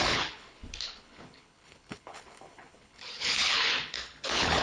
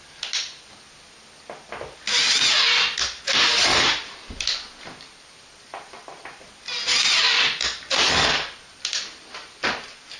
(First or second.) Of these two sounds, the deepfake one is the first